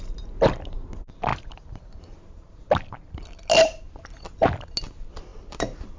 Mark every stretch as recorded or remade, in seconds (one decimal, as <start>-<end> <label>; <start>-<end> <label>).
0.0-1.3 recorded; 1.3-2.7 remade; 2.7-5.3 recorded; 5.3-6.0 remade